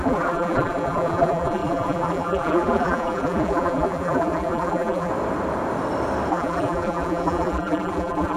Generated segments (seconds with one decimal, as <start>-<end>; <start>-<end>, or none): 0.0-5.1; 6.3-8.4